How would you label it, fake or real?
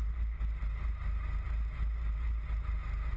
real